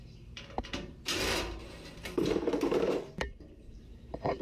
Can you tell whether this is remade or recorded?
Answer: remade